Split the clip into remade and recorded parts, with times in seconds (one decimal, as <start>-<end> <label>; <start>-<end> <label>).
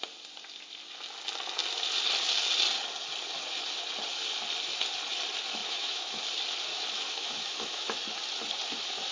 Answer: 0.0-5.6 recorded; 5.6-6.2 remade; 6.2-6.7 recorded; 6.7-8.0 remade; 8.0-9.1 recorded